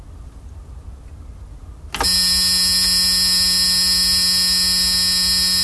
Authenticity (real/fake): real